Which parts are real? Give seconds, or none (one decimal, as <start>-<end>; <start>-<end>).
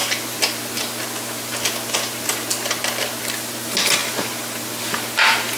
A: 0.0-4.0